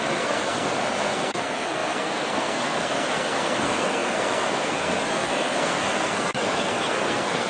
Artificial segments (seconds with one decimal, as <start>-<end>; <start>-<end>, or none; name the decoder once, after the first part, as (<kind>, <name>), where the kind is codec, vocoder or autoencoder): 0.0-7.5 (codec, SNAC)